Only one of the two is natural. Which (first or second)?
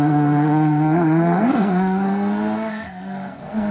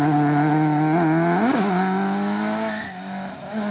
second